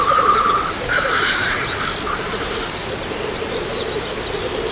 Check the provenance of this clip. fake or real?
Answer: real